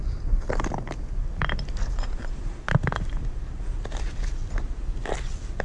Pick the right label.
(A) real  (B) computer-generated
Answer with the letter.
A